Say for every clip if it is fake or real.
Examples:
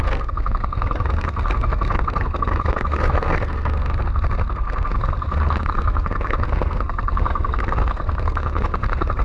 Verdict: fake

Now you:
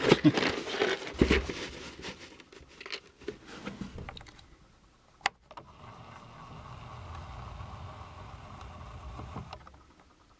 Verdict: real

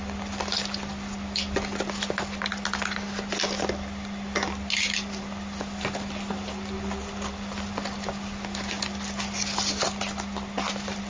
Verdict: real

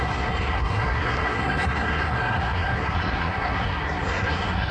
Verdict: fake